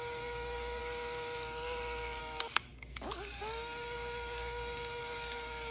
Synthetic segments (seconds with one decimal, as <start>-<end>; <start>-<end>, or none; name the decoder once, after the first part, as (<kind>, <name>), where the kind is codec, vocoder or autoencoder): 0.0-0.8 (codec, DAC); 2.2-5.7